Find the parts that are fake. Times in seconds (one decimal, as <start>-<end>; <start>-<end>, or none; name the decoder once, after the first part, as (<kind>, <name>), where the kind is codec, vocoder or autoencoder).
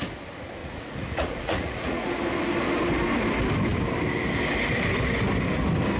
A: 0.6-2.2 (vocoder, Vocos)